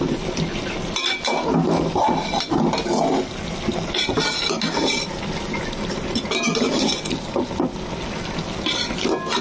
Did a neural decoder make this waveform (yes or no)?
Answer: no